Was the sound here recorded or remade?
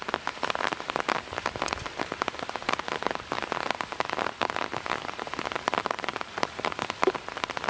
recorded